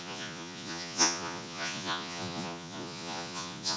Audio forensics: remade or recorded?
remade